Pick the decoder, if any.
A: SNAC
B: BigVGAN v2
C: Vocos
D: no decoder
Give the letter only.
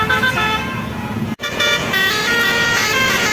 C